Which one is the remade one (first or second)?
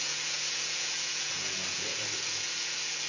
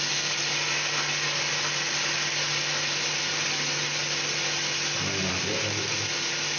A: first